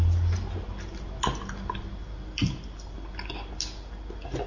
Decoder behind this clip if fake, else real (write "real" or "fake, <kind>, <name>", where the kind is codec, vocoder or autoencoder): real